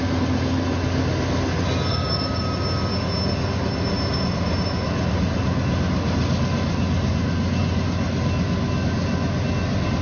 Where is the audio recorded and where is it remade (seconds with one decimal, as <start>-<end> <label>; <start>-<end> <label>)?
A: 0.0-1.9 recorded; 1.9-2.4 remade; 2.4-10.0 recorded